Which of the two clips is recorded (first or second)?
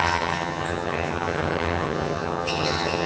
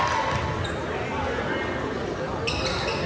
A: second